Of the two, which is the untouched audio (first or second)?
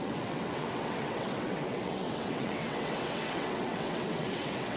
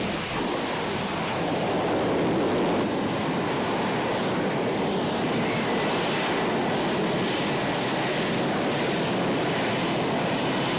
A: second